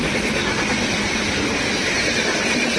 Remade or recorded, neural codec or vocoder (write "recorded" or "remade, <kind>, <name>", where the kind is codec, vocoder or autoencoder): recorded